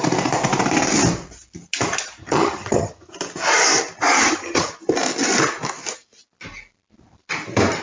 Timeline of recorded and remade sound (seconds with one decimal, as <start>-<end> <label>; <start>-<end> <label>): 0.0-2.2 recorded; 2.2-3.1 remade; 3.1-4.2 recorded; 4.2-4.7 remade; 4.7-7.8 recorded